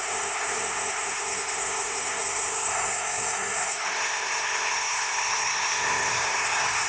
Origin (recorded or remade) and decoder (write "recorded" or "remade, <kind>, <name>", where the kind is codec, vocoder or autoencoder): remade, codec, SNAC